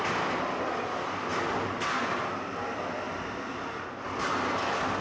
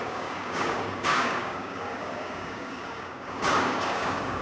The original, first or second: first